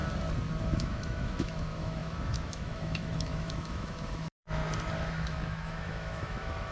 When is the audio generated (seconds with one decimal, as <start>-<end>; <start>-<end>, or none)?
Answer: 0.6-4.6; 5.1-6.7